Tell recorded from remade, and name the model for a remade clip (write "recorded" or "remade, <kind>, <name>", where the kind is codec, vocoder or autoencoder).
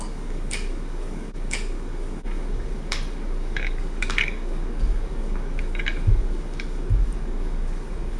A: remade, codec, DAC